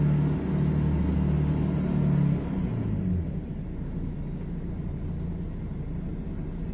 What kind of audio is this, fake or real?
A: real